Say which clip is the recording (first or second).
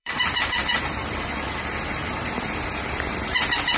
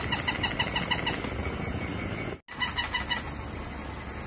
second